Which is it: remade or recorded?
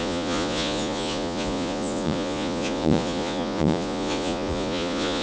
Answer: remade